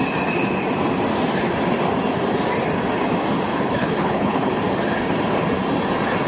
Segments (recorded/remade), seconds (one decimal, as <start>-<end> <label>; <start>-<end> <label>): 0.0-3.5 recorded; 3.5-4.5 remade; 4.5-6.3 recorded